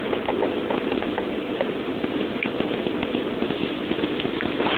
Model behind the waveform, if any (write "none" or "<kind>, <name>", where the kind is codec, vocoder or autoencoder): none